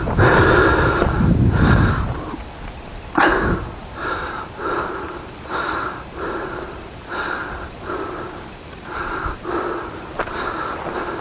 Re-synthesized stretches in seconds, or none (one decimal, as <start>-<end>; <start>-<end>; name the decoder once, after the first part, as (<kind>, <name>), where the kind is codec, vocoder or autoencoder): 3.3-7.1 (vocoder, BigVGAN v2)